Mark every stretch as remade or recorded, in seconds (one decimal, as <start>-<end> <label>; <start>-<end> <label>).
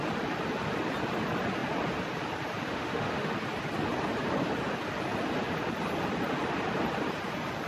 0.0-2.7 recorded; 2.7-3.3 remade; 3.3-7.7 recorded